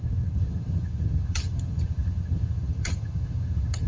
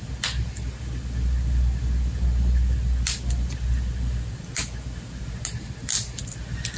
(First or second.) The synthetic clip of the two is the first